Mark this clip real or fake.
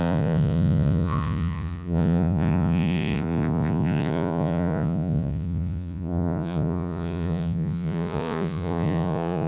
fake